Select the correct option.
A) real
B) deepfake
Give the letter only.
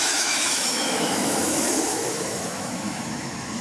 B